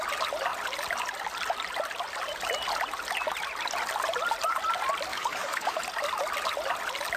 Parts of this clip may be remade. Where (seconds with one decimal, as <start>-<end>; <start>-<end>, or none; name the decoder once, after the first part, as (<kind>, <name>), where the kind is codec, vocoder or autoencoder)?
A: 5.1-5.8 (codec, DAC)